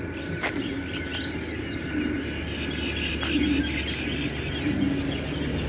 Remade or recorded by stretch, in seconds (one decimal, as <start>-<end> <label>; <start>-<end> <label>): 0.0-5.7 recorded